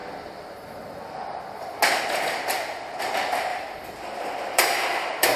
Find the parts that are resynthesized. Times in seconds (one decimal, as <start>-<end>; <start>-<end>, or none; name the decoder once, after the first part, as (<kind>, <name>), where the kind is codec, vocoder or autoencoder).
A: 3.5-5.4 (vocoder, BigVGAN v2)